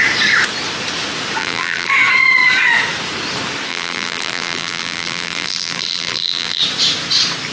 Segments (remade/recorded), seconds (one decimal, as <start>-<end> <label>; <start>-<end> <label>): 0.0-1.4 recorded; 1.4-1.9 remade; 1.9-3.7 recorded; 3.7-6.6 remade; 6.6-7.5 recorded